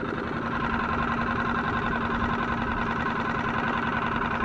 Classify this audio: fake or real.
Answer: real